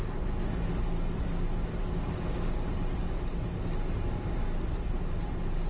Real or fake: real